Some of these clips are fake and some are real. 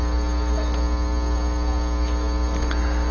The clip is real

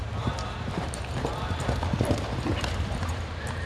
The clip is fake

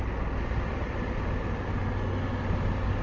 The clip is real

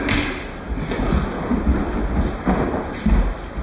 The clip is real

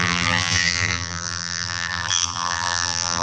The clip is fake